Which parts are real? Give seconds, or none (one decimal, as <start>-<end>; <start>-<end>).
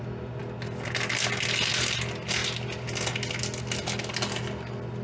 0.0-5.0